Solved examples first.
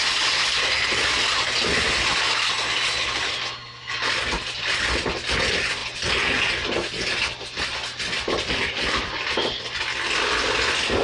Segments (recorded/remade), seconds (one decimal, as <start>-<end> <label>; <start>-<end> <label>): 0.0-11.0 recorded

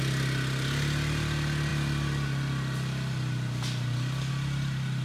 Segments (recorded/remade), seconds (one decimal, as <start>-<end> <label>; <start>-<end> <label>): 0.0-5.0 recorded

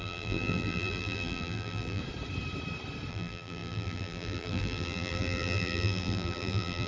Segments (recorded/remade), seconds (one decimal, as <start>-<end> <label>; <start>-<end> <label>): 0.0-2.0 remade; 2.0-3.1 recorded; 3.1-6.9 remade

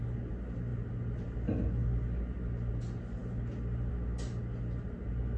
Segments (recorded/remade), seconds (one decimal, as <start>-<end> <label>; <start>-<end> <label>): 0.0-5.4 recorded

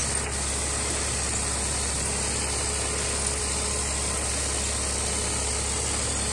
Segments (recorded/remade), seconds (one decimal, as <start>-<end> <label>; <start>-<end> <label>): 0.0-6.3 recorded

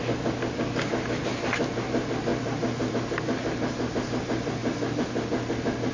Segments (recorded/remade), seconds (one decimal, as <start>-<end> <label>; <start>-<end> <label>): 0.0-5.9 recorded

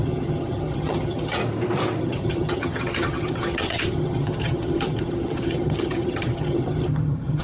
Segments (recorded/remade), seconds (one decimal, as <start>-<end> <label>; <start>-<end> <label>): 0.0-1.4 remade; 1.4-2.0 recorded; 2.0-7.4 remade